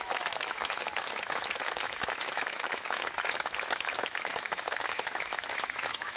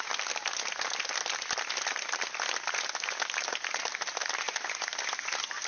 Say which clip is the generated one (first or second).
first